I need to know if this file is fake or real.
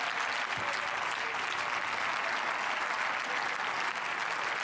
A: real